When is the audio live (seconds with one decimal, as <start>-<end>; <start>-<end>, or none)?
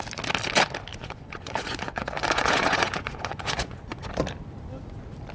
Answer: 0.0-0.9; 4.1-5.3